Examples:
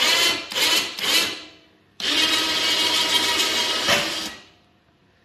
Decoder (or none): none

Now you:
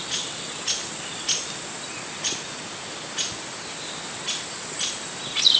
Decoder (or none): none